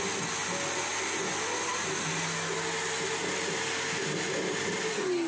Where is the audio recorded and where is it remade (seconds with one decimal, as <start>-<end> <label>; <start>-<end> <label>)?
0.0-5.3 recorded